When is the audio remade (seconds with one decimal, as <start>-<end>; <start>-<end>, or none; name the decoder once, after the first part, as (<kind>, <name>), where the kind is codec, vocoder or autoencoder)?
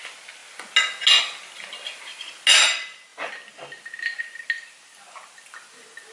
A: none